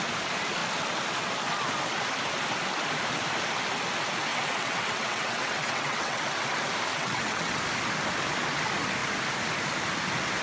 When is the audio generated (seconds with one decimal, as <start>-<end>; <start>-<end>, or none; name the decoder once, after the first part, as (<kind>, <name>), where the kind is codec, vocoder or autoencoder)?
4.3-6.2 (vocoder, WaveNeXt); 6.9-7.6